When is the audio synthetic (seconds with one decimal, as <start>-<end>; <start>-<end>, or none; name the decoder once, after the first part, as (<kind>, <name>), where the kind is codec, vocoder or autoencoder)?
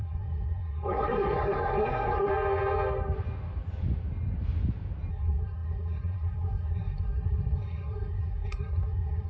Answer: 0.0-2.3 (codec, SNAC); 5.1-9.3